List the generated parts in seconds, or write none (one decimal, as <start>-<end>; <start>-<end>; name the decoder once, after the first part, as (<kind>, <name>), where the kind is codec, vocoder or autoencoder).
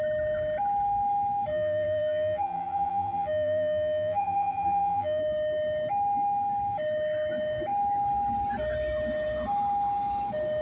1.5-5.2 (vocoder, BigVGAN v2)